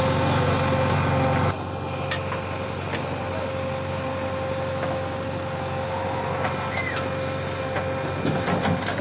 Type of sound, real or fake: real